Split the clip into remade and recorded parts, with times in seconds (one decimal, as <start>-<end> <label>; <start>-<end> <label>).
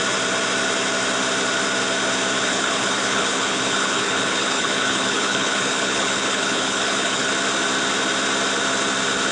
0.0-2.5 recorded; 2.5-7.3 remade; 7.3-9.3 recorded